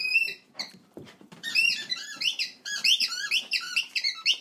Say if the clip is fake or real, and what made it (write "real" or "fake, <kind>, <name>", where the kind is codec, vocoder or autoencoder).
fake, vocoder, BigVGAN v2